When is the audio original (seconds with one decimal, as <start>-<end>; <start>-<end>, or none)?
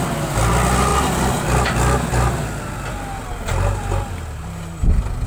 0.0-5.3